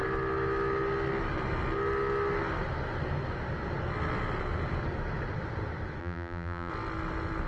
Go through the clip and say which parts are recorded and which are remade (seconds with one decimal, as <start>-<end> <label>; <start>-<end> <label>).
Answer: 0.0-6.0 recorded; 6.0-6.7 remade; 6.7-7.5 recorded

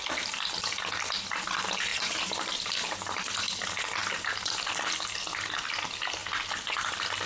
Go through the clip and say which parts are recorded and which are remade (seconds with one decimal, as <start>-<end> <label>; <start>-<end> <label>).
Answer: 0.0-1.9 recorded; 1.9-2.7 remade; 2.7-7.3 recorded

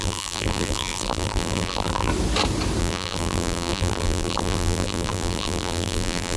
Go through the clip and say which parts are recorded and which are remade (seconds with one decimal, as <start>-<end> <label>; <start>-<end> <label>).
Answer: 0.0-2.1 remade; 2.1-2.8 recorded; 2.8-6.4 remade

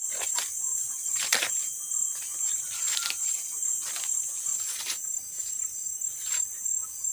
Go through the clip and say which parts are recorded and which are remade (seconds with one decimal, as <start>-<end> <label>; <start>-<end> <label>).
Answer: 0.0-0.7 recorded; 0.7-1.6 remade; 1.6-2.3 recorded; 2.3-2.9 remade; 2.9-7.1 recorded

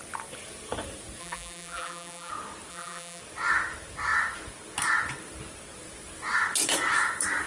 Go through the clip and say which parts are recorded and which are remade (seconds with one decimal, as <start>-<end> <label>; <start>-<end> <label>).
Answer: 0.0-1.2 recorded; 1.2-2.3 remade; 2.3-2.7 recorded; 2.7-3.2 remade; 3.2-7.5 recorded

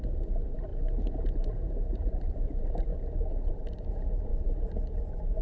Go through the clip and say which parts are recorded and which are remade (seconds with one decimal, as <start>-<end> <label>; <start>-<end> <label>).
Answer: 0.0-0.7 remade; 0.7-1.5 recorded; 1.5-2.9 remade; 2.9-3.5 recorded; 3.5-4.3 remade; 4.3-5.4 recorded

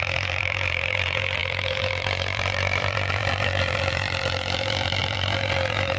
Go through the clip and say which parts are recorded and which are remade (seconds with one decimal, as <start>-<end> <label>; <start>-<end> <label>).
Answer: 0.0-6.0 remade

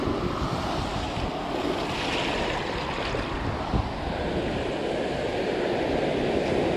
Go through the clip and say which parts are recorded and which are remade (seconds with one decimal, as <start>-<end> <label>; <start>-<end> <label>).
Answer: 0.0-6.8 recorded